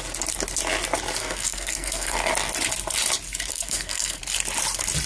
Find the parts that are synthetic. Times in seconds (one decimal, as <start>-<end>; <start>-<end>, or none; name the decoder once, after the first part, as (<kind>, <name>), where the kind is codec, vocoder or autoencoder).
1.2-2.3 (codec, SNAC); 3.5-4.2